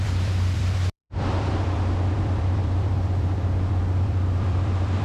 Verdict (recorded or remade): remade